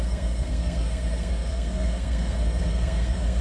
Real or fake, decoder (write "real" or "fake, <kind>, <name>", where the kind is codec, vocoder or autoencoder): fake, codec, SNAC